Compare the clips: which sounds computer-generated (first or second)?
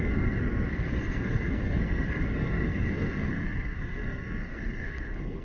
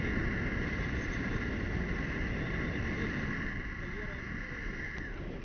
first